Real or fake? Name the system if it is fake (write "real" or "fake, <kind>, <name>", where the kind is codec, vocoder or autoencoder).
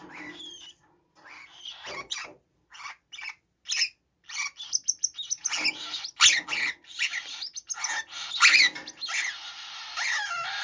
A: real